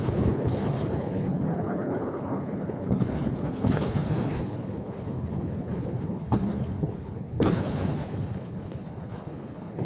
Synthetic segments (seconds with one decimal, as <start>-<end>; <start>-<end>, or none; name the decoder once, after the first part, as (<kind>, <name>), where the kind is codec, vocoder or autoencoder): 0.0-9.8 (codec, HILCodec)